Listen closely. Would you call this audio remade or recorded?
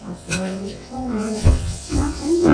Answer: remade